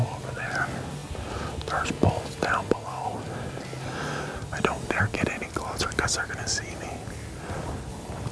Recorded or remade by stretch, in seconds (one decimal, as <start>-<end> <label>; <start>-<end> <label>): 0.0-8.3 recorded